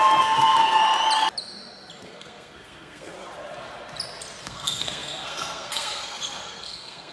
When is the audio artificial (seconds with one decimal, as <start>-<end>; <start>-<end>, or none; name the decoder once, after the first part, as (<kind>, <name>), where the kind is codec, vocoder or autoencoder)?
0.0-0.8 (codec, SNAC); 2.0-3.1; 4.4-7.1